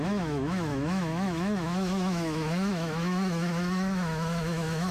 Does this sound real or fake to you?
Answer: fake